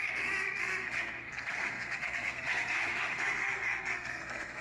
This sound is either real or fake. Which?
fake